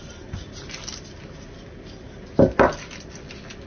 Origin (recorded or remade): recorded